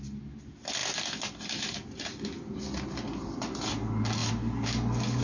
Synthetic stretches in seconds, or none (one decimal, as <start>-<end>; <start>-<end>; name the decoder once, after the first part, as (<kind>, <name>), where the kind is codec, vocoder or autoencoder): none